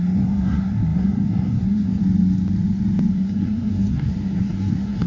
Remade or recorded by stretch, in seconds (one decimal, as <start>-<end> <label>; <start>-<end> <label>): 0.0-2.0 remade; 2.0-3.1 recorded; 3.1-5.1 remade